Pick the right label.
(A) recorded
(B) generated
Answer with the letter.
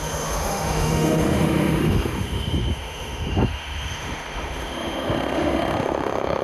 B